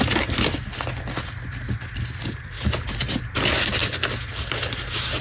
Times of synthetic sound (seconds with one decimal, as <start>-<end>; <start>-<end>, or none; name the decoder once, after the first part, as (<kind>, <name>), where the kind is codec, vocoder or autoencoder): none